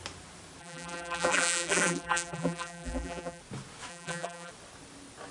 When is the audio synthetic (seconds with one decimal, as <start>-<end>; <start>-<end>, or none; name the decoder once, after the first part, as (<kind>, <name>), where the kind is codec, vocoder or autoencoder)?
0.6-3.4 (vocoder, BigVGAN v2); 3.9-4.5

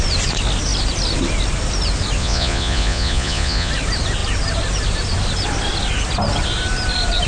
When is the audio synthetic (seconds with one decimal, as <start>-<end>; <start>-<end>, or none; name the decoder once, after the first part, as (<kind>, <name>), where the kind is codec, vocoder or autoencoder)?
2.2-3.7 (vocoder, Vocos)

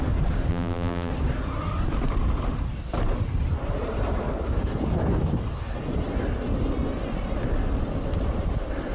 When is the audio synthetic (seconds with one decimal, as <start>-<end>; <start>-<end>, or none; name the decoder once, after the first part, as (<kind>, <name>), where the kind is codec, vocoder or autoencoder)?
0.5-1.1 (vocoder, BigVGAN v2)

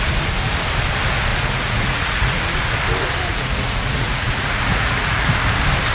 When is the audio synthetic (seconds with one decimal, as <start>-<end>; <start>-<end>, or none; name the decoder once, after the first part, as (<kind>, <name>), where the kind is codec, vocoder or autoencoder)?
1.3-2.4 (vocoder, Vocos); 3.3-5.3

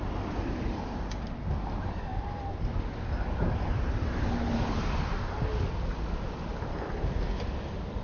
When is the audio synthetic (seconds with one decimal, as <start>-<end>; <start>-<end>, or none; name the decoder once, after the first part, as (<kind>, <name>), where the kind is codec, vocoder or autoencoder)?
6.5-8.0 (vocoder, BigVGAN v2)

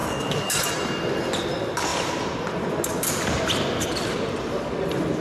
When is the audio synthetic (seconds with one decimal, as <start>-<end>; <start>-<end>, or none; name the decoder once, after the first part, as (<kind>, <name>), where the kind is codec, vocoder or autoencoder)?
0.0-0.7 (codec, DAC)

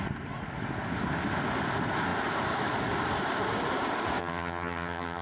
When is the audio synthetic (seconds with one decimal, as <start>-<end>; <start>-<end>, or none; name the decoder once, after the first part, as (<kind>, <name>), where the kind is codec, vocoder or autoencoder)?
4.2-5.2 (vocoder, HiFi-GAN)